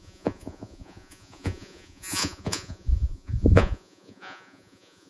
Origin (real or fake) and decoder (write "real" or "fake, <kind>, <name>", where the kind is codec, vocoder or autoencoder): fake, vocoder, Vocos